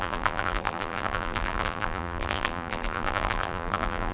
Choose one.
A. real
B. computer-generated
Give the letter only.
B